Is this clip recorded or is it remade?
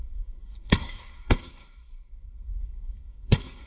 remade